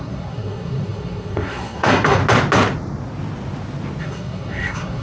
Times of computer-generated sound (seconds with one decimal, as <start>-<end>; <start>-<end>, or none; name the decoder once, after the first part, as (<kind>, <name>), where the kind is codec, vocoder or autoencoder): 0.0-2.2 (codec, SNAC); 4.0-5.0